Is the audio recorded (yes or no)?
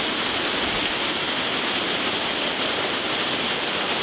yes